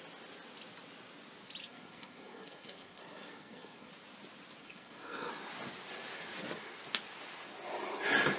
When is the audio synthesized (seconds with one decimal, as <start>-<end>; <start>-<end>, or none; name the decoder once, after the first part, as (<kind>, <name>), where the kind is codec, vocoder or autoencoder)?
1.6-3.9 (codec, SNAC); 4.6-5.3